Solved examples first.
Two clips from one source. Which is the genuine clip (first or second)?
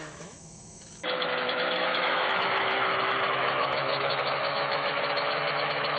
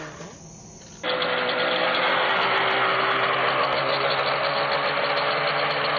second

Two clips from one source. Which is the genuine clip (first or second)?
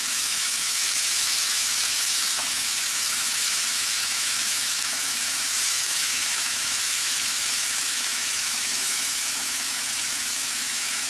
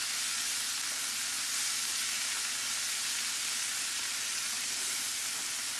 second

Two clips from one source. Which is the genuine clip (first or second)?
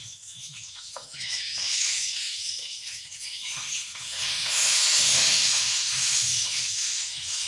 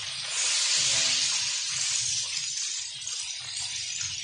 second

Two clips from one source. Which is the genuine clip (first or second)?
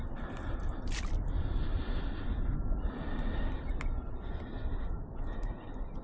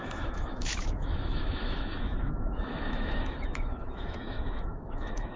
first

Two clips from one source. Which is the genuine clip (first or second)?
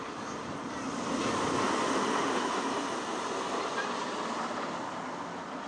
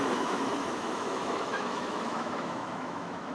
first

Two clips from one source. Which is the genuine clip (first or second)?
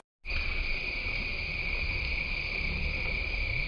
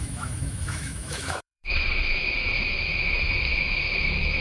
first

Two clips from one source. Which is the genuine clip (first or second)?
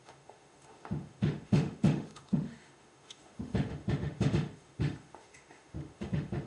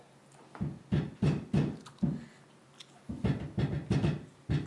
second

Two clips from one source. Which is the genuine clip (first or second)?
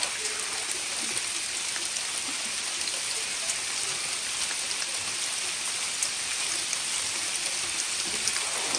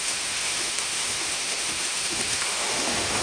first